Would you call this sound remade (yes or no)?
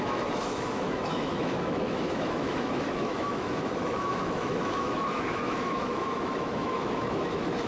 yes